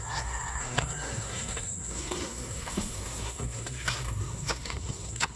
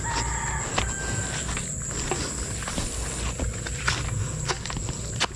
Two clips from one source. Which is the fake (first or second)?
first